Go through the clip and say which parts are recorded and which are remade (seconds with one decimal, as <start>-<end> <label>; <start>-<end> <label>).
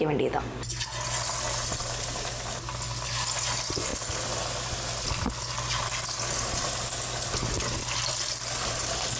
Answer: 0.0-9.2 recorded